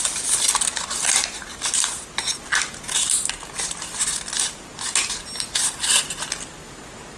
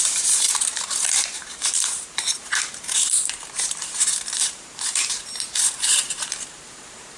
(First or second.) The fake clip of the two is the second